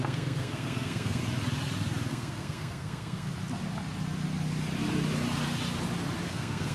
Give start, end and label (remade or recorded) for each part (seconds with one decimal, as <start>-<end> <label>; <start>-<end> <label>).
0.0-1.2 remade; 1.2-2.1 recorded; 2.1-3.3 remade; 3.3-6.3 recorded; 6.3-6.7 remade